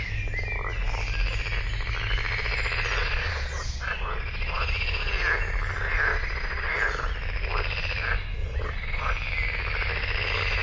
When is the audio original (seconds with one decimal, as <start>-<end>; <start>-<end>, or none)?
0.0-3.0; 5.1-6.1; 6.7-8.4; 9.1-10.6